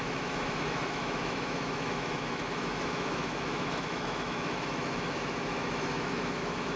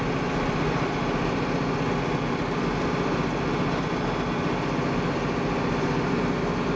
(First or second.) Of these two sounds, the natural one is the second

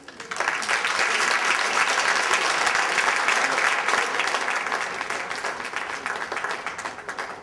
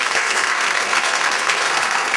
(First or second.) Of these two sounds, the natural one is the first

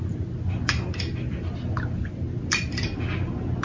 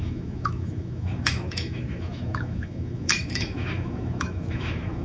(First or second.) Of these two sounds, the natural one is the first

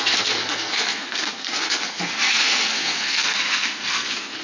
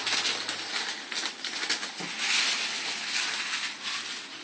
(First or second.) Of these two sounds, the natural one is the second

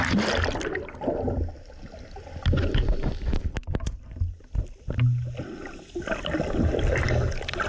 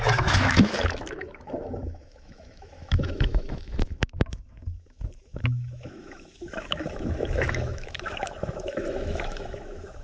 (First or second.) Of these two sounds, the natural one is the first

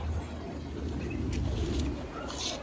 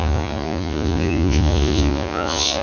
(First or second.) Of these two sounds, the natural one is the first